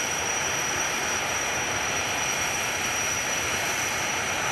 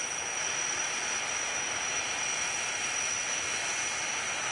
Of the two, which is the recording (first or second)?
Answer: second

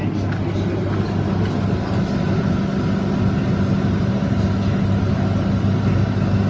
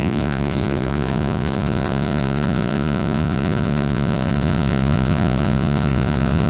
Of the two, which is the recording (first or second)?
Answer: first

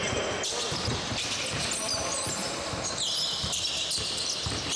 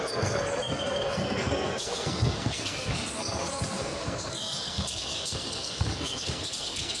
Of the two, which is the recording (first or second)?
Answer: first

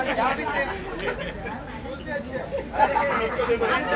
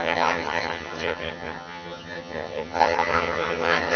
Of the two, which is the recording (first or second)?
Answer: first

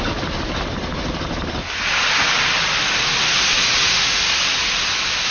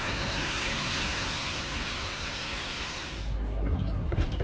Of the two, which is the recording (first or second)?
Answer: first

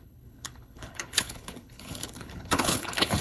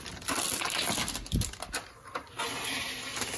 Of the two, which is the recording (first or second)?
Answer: second